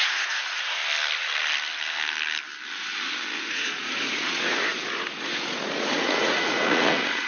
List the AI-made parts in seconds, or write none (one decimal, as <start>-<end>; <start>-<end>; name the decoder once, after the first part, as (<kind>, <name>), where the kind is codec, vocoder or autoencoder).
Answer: 0.0-0.8 (vocoder, Vocos); 3.4-7.3